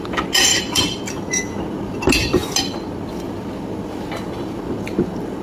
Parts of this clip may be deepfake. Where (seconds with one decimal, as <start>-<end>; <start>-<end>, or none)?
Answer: 0.5-1.0